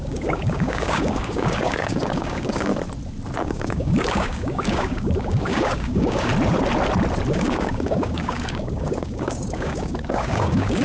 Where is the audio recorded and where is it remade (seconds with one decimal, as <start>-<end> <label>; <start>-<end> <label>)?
0.0-2.7 remade; 2.7-3.4 recorded; 3.4-6.3 remade; 6.3-7.3 recorded; 7.3-10.8 remade